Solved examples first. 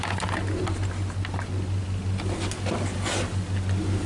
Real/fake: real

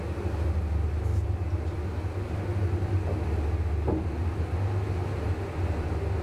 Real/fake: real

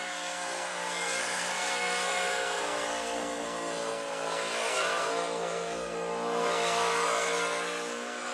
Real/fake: fake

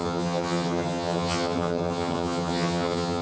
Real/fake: fake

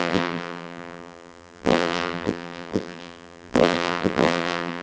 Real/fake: fake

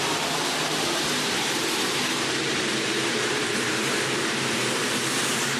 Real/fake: fake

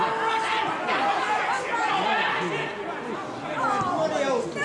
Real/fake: real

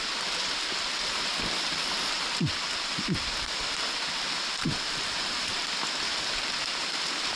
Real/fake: real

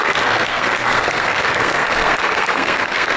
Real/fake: fake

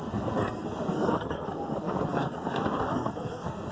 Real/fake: fake